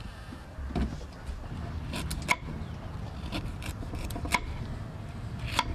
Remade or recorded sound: recorded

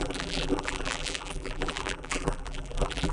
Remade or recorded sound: remade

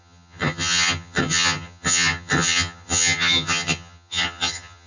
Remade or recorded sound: remade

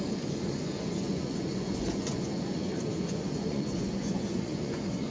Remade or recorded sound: remade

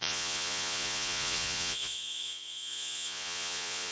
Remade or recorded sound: remade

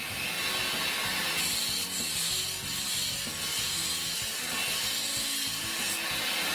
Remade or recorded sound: recorded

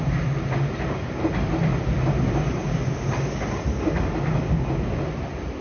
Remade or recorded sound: recorded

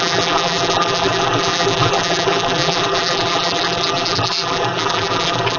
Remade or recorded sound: remade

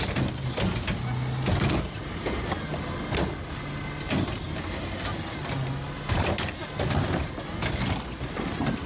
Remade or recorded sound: recorded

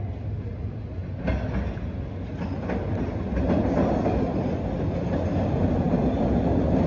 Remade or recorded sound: recorded